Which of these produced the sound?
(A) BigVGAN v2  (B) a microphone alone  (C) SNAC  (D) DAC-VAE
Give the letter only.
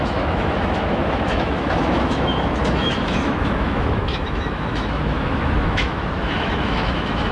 D